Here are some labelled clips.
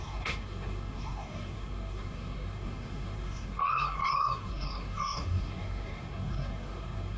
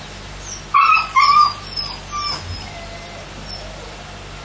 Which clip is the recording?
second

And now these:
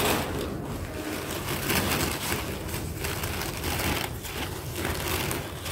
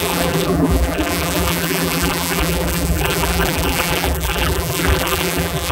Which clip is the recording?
first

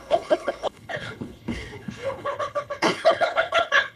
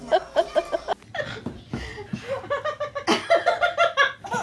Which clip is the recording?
second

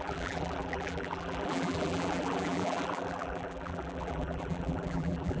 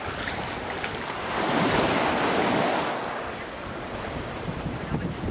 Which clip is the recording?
second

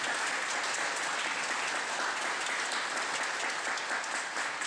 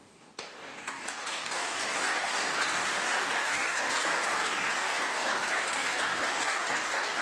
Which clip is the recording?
first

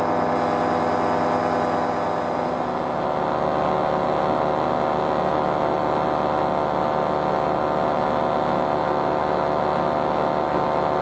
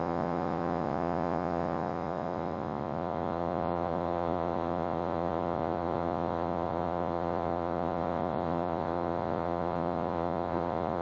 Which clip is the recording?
first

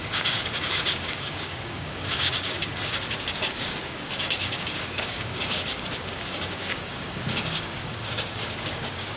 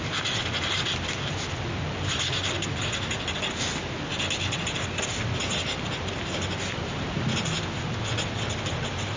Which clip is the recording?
second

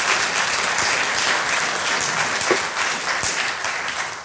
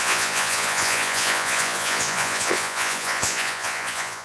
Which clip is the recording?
first